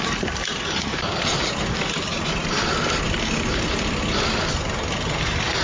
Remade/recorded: recorded